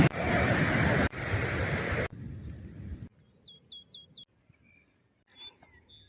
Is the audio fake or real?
real